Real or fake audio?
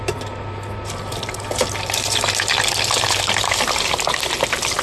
real